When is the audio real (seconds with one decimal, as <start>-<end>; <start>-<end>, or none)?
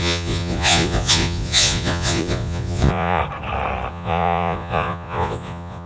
3.2-3.9